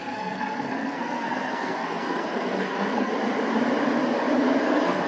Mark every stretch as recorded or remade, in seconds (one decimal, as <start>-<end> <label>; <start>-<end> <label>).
0.0-3.1 remade; 3.1-4.6 recorded; 4.6-5.1 remade